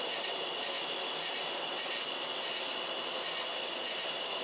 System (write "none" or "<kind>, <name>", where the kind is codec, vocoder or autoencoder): none